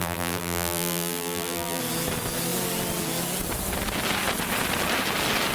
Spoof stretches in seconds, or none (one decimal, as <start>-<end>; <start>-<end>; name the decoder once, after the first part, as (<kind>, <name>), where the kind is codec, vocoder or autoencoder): 0.0-1.8 (vocoder, BigVGAN v2)